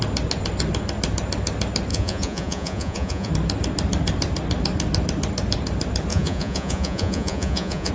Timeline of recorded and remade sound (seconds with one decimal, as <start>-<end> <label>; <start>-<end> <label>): 0.0-1.9 recorded; 1.9-3.3 remade; 3.3-6.1 recorded; 6.1-7.9 remade